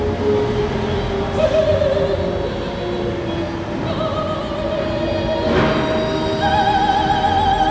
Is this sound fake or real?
real